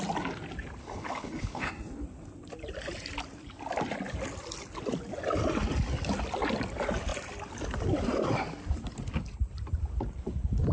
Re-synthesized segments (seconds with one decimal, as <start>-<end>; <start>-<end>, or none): 0.8-1.7